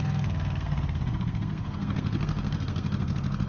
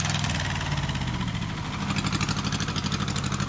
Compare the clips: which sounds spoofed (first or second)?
first